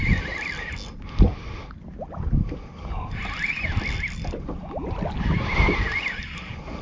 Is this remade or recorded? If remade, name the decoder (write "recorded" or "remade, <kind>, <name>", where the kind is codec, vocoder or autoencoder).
recorded